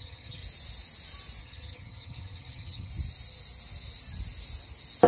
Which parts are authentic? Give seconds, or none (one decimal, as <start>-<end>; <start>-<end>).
0.4-1.4; 2.9-5.1